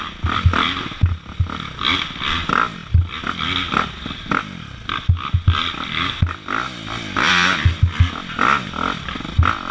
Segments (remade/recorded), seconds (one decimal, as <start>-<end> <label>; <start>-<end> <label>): 0.0-9.7 recorded